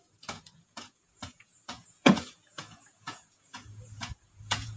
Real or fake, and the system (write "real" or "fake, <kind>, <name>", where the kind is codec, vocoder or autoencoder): fake, vocoder, Vocos